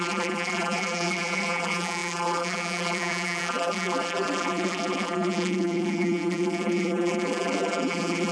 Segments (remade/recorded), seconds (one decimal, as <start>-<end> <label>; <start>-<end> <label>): 0.0-8.3 remade